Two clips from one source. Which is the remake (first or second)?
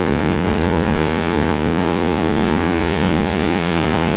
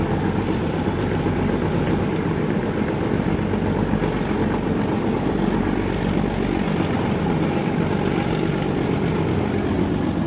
first